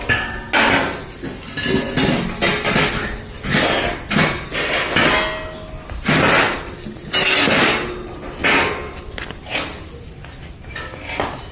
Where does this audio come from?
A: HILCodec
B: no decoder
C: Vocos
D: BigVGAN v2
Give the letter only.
B